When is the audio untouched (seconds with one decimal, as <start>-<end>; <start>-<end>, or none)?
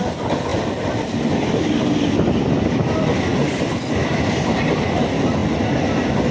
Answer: 0.0-0.5; 1.3-3.3; 4.8-6.3